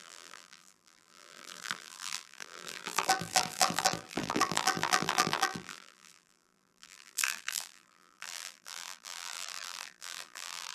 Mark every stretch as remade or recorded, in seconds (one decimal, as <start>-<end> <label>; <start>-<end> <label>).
0.0-10.7 remade